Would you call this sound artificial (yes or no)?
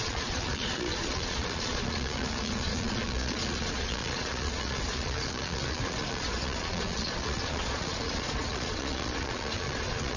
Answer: yes